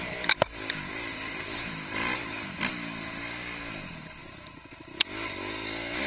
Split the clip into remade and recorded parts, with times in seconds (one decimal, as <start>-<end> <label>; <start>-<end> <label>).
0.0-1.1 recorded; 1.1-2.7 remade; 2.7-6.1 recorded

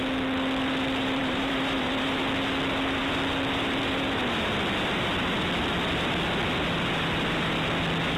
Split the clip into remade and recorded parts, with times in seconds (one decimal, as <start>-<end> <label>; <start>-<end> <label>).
0.0-1.2 recorded; 1.2-2.2 remade; 2.2-8.2 recorded

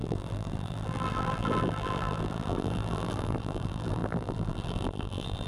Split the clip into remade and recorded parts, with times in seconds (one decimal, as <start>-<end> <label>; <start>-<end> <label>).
0.0-5.5 remade

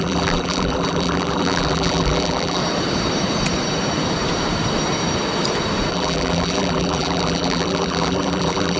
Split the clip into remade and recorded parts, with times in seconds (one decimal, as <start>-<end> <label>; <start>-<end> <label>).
0.0-2.6 remade; 2.6-5.9 recorded; 5.9-8.8 remade

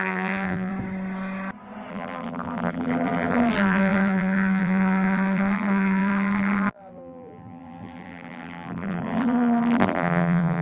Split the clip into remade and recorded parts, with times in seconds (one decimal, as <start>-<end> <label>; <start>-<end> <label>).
0.0-0.7 remade; 0.7-1.9 recorded; 1.9-10.6 remade

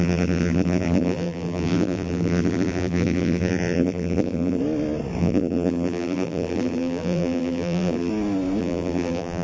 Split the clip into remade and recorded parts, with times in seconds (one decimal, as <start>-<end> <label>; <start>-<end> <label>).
0.0-4.6 remade; 4.6-5.2 recorded; 5.2-8.1 remade; 8.1-8.6 recorded; 8.6-9.4 remade